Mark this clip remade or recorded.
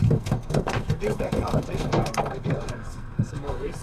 remade